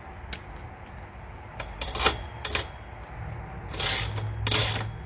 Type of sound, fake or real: real